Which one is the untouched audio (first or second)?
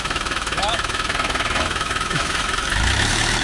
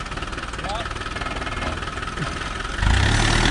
second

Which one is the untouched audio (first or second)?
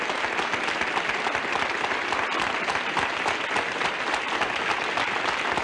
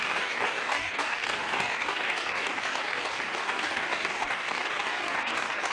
first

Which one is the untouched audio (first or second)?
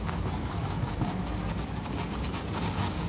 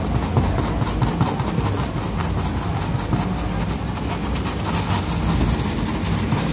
second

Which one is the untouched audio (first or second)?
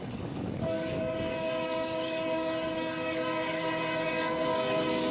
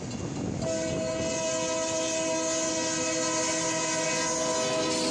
second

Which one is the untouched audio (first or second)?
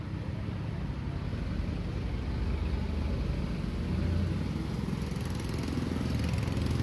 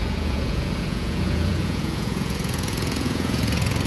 first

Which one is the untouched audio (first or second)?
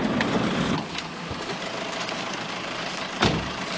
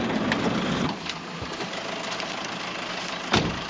second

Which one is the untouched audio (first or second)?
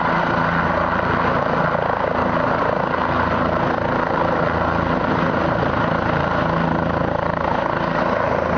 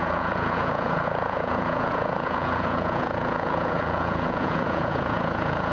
first